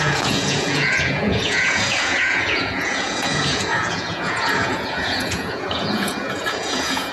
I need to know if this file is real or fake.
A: fake